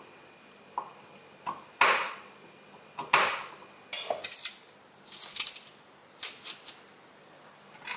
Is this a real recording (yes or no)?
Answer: yes